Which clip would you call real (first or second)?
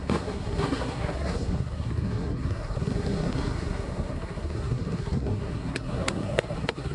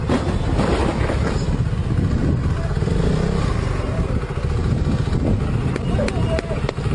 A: second